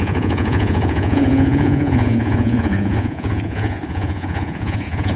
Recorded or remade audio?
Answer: remade